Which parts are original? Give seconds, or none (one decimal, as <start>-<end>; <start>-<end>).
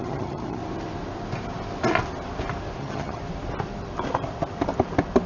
0.6-2.8; 3.2-5.3